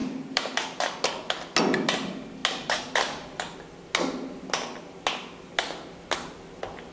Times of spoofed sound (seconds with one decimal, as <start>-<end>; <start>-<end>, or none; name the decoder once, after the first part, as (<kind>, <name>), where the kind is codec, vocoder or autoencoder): 0.0-0.8 (vocoder, BigVGAN v2)